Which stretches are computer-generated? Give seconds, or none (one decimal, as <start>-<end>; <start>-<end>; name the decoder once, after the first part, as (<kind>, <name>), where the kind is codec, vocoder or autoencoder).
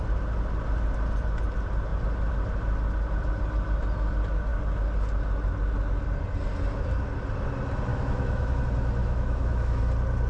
7.9-8.6 (autoencoder, DAC-VAE); 9.0-9.8